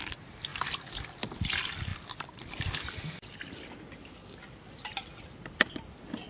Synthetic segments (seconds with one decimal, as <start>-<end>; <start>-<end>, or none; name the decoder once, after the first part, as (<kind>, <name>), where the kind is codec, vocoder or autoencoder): none